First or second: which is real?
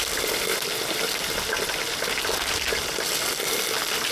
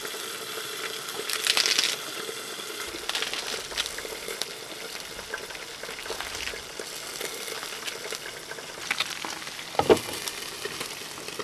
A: second